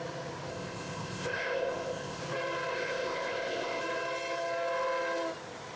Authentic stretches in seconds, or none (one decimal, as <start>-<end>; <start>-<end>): 0.0-0.5; 2.2-2.7; 3.8-5.8